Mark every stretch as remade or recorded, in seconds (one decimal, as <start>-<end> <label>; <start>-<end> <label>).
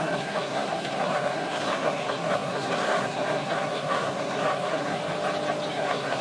0.0-5.0 remade; 5.0-5.7 recorded; 5.7-6.2 remade